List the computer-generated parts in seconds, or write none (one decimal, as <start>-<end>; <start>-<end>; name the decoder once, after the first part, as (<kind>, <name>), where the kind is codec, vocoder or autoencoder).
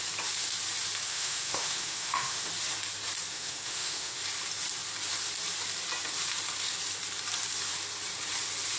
1.1-2.5 (autoencoder, DAC-VAE); 3.3-4.2